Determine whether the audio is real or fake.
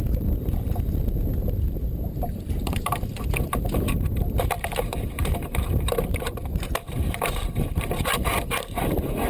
fake